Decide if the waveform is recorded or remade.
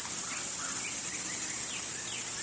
recorded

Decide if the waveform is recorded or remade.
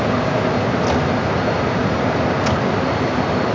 recorded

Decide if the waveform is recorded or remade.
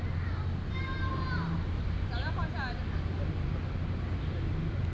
recorded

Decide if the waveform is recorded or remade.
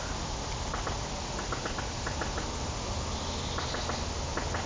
recorded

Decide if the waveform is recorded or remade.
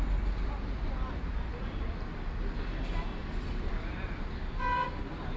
recorded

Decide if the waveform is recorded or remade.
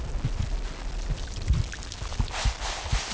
recorded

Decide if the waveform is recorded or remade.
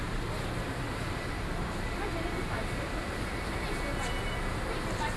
recorded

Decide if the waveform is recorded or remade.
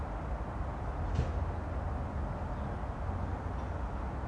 recorded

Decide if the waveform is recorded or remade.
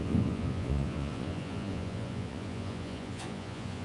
remade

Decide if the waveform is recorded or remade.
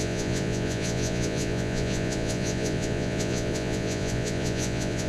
remade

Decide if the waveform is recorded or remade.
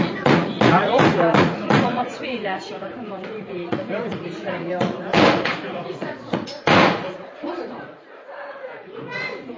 remade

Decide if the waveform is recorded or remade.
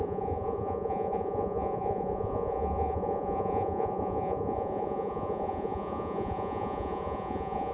remade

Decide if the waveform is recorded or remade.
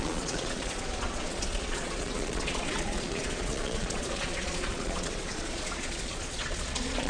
remade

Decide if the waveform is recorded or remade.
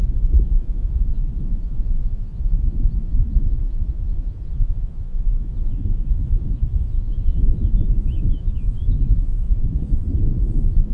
remade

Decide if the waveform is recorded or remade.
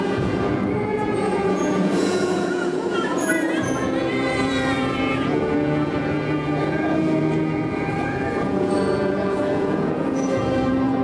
remade